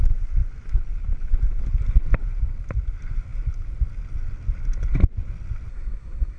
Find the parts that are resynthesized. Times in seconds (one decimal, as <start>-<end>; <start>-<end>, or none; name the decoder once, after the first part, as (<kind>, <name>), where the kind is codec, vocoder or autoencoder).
5.7-6.4 (codec, SNAC)